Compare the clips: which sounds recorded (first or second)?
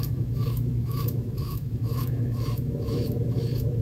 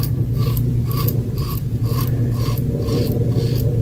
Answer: second